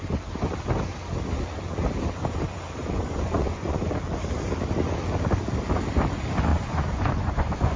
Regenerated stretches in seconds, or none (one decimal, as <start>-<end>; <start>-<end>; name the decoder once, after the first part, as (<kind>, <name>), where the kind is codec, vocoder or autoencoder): 2.8-3.8 (vocoder, Vocos); 6.5-7.8